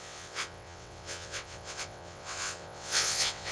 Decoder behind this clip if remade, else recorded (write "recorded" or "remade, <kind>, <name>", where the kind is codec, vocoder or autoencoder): remade, vocoder, WaveNeXt